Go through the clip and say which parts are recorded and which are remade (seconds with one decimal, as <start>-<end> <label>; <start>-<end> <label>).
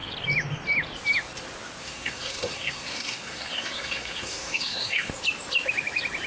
0.0-1.8 recorded; 1.8-5.1 remade; 5.1-6.3 recorded